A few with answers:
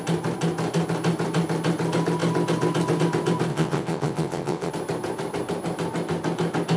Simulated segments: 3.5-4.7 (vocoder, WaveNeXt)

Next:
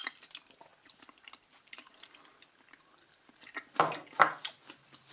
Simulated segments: none

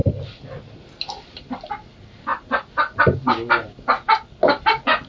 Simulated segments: none

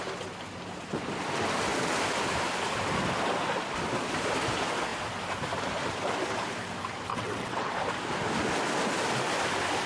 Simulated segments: 7.1-7.7 (vocoder, WaveNeXt)

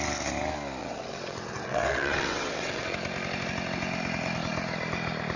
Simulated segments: 0.8-2.9 (vocoder, WaveNeXt)